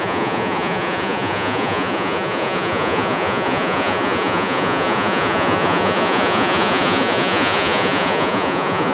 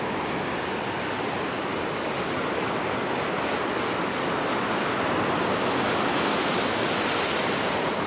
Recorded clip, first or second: second